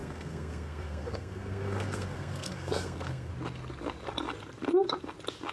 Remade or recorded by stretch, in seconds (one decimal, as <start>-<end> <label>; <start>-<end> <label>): 0.0-3.3 remade; 3.3-5.5 recorded